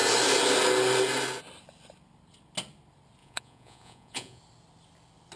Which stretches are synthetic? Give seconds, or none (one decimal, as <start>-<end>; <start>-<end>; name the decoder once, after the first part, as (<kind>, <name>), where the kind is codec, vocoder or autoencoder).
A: 3.2-4.4 (vocoder, Vocos)

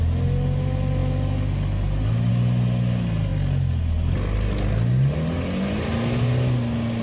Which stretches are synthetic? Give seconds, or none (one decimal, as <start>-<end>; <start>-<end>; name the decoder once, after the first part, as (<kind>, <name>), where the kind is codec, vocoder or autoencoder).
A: none

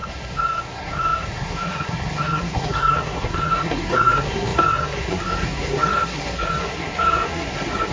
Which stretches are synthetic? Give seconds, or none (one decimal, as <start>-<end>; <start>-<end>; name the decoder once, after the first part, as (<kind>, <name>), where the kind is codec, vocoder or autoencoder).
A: 0.0-7.9 (codec, SNAC)

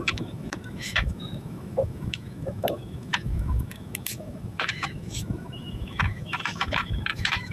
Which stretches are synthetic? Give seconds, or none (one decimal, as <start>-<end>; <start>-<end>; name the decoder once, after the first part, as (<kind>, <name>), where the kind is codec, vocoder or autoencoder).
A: 0.0-7.5 (autoencoder, DAC-VAE)

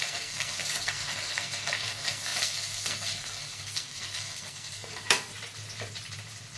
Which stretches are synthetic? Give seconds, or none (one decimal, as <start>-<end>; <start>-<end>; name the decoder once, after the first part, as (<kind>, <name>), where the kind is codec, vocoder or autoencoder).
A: 0.0-5.3 (codec, SNAC)

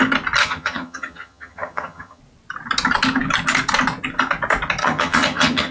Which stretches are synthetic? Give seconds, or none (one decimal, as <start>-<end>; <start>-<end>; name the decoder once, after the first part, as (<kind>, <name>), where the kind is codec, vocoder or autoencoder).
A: 0.4-2.2 (vocoder, HiFi-GAN); 4.8-5.7

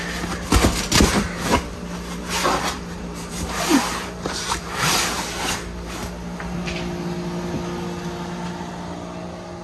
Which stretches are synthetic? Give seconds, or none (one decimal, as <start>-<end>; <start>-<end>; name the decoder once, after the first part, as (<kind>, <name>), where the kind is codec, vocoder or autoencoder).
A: 2.4-5.0 (vocoder, BigVGAN v2)